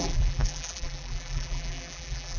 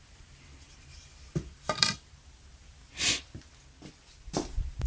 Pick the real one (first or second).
second